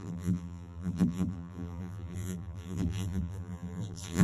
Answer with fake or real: fake